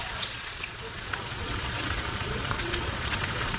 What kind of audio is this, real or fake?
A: fake